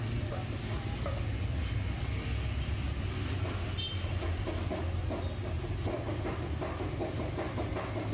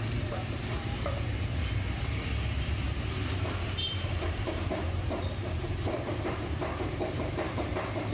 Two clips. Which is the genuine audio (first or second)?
first